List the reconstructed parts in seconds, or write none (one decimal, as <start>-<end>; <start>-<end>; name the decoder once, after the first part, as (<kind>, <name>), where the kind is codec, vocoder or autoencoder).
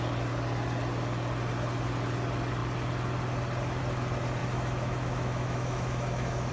4.4-6.5 (autoencoder, DAC-VAE)